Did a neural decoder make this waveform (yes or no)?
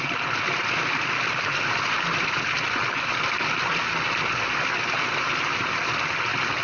no